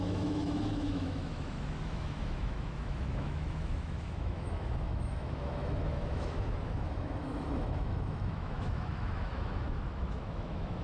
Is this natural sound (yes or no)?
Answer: no